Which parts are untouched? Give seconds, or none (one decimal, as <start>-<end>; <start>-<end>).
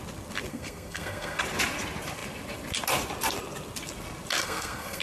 0.0-0.5; 1.4-4.4